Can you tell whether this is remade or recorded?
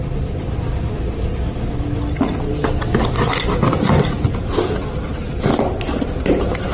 recorded